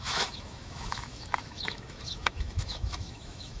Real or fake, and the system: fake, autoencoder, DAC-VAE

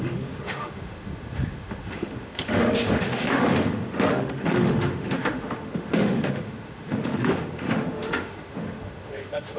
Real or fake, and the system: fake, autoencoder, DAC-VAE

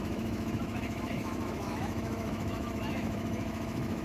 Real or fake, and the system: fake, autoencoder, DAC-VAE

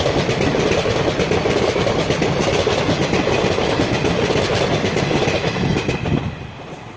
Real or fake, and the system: real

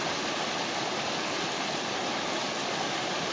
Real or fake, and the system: real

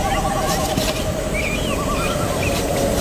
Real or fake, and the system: real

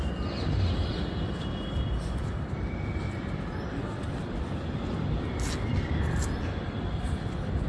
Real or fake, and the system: real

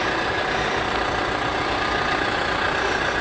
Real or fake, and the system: real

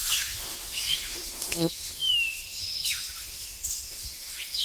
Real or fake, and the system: fake, autoencoder, DAC-VAE